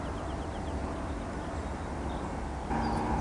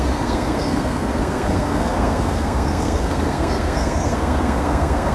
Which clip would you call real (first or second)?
first